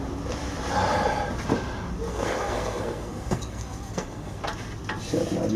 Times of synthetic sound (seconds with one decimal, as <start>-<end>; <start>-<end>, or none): 2.1-4.4